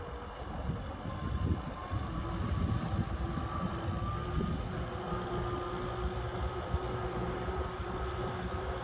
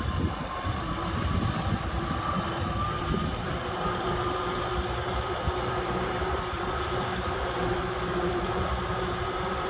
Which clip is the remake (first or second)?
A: second